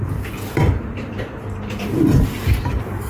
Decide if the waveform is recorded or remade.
remade